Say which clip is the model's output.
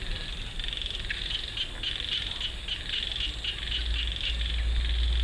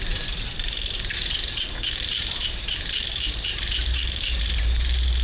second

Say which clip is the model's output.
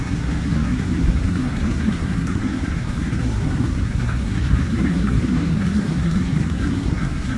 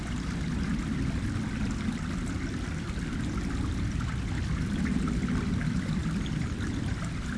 first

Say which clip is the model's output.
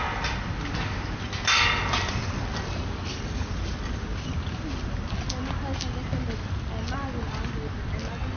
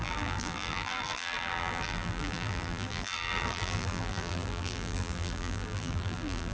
second